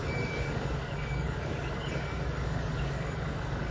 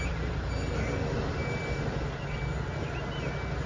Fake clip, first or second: first